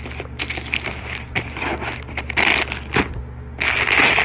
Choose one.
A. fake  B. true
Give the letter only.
B